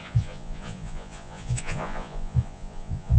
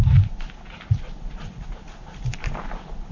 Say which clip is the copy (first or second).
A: first